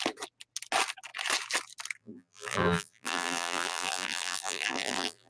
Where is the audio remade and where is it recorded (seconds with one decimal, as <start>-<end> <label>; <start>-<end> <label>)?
0.0-2.0 recorded; 2.0-5.3 remade